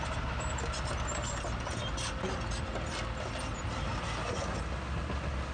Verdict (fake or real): real